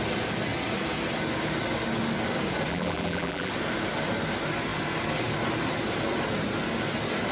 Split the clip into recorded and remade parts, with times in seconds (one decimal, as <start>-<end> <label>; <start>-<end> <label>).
0.0-2.7 recorded; 2.7-3.5 remade; 3.5-7.3 recorded